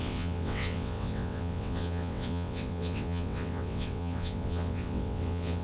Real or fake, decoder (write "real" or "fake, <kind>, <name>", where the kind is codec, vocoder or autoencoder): fake, vocoder, WaveNeXt